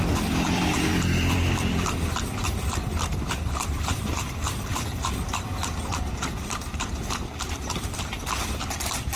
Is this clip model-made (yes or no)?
yes